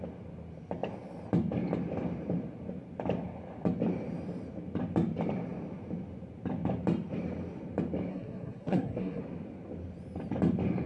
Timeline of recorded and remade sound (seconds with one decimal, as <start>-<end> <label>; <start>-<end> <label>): 0.0-8.1 recorded; 8.1-9.2 remade; 9.2-10.9 recorded